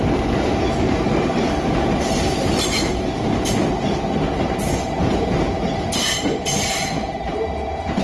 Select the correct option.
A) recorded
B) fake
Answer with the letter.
A